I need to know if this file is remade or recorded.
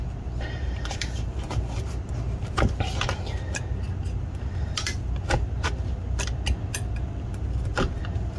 recorded